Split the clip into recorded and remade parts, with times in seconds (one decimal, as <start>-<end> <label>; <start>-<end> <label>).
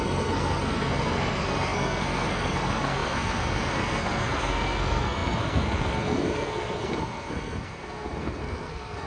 0.0-9.1 remade